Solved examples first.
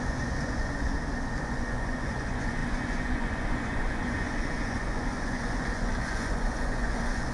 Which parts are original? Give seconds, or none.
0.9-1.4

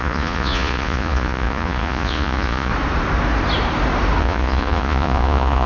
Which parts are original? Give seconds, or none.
2.7-4.2

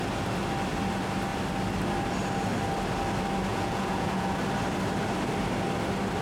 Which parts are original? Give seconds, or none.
0.0-3.5; 4.4-6.2

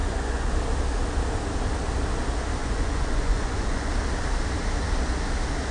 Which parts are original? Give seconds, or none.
0.5-2.6; 3.9-5.7

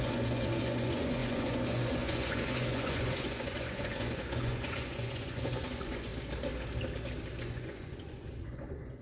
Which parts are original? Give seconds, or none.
6.1-7.4

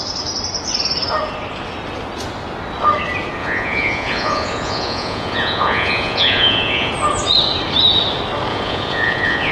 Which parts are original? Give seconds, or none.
0.0-3.4; 6.9-8.5